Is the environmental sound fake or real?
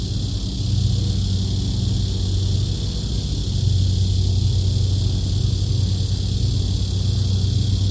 real